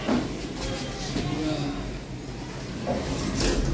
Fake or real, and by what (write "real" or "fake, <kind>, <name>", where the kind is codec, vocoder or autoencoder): real